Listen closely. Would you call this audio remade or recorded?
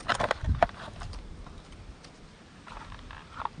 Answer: recorded